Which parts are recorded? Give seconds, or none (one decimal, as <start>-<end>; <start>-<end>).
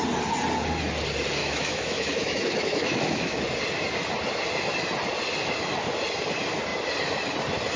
0.0-1.4; 3.4-7.8